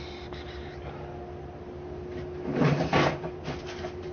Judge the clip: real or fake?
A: real